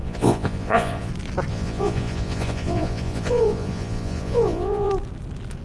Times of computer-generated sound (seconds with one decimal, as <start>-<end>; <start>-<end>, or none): 0.0-1.1; 1.5-4.9